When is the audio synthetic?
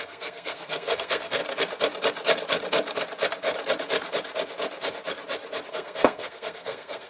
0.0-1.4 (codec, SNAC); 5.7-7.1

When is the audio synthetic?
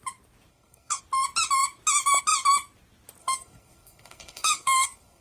0.5-1.0 (codec, SNAC); 3.2-5.2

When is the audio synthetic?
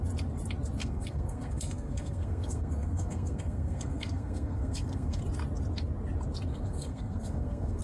0.8-5.2 (codec, SNAC); 6.5-7.8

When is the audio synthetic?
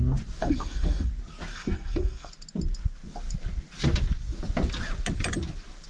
0.4-1.1 (codec, SNAC); 1.5-2.3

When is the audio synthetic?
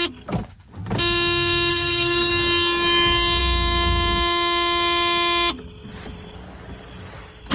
1.7-2.3 (codec, SNAC)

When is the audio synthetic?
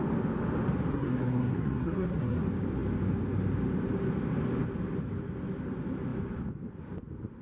0.9-2.4 (codec, SNAC)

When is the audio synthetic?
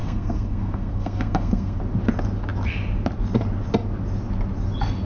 0.0-1.8 (codec, SNAC)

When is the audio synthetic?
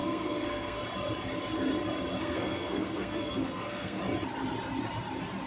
0.0-0.8 (codec, SNAC); 2.2-4.0